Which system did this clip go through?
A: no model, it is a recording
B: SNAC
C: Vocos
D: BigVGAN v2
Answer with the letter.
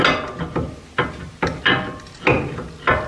A